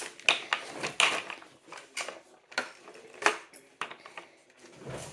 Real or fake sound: real